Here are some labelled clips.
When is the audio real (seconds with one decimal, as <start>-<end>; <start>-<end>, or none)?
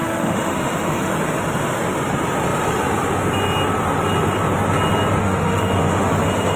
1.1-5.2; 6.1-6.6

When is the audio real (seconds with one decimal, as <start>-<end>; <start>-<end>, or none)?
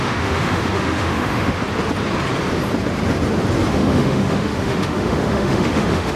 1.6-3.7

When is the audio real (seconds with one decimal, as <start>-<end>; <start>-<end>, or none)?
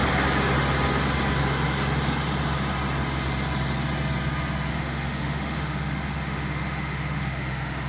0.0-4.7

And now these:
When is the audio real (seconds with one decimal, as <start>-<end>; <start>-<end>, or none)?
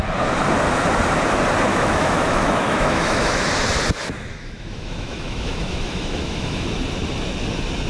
0.0-1.7; 3.5-4.3; 6.7-7.9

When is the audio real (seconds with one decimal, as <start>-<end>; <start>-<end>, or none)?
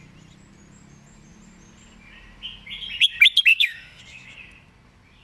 0.0-3.5; 4.0-5.2